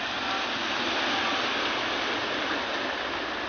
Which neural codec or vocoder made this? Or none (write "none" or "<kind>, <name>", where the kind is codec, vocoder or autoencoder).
none